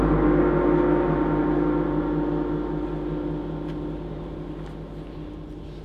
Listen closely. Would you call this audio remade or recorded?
recorded